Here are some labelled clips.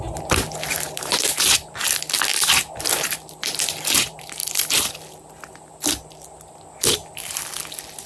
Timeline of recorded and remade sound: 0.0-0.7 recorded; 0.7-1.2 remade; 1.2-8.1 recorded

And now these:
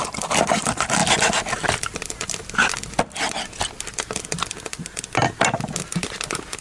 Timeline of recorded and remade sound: 0.0-6.6 recorded

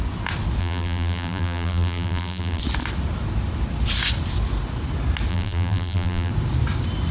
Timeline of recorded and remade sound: 0.0-0.6 recorded; 0.6-2.6 remade; 2.6-5.3 recorded; 5.3-6.3 remade; 6.3-7.1 recorded